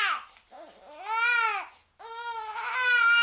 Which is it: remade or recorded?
recorded